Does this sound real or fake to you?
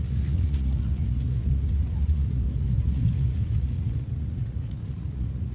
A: fake